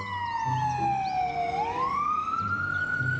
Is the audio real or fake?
real